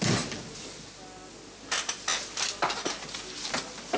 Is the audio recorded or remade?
recorded